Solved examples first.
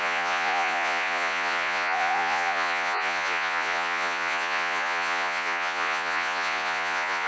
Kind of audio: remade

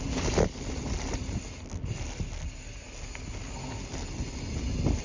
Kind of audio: recorded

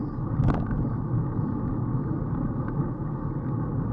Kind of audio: recorded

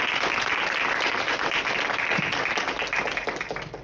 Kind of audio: recorded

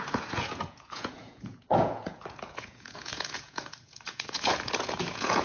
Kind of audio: remade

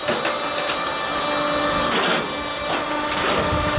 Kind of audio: recorded